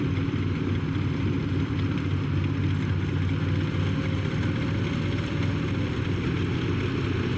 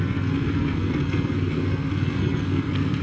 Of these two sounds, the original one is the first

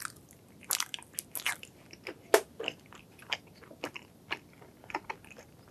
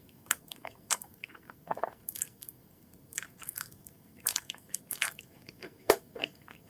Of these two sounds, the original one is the first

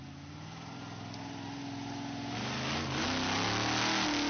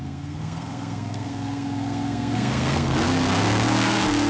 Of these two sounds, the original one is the first